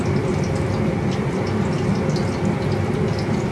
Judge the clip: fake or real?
real